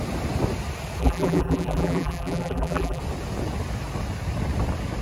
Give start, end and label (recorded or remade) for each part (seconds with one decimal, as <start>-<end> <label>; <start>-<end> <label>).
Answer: 0.0-1.0 recorded; 1.0-3.0 remade; 3.0-5.0 recorded